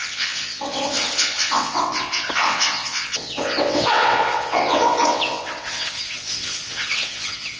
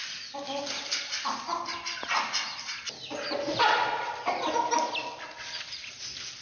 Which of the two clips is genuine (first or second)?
second